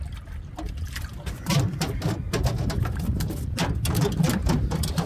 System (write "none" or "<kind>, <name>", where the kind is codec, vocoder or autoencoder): none